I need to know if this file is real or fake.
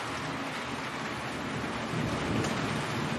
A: real